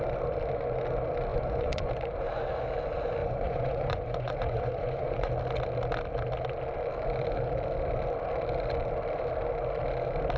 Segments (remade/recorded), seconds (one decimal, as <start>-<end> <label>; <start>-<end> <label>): 0.0-1.3 recorded; 1.3-1.9 remade; 1.9-3.2 recorded; 3.2-5.3 remade; 5.3-10.4 recorded